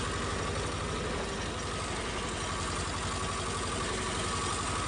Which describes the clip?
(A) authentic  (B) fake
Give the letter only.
A